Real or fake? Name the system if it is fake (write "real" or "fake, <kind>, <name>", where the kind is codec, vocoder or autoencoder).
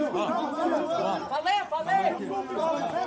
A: real